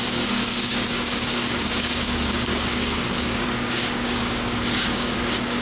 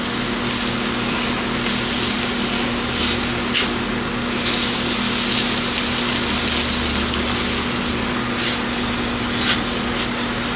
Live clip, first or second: second